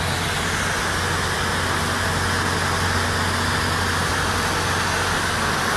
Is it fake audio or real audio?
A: real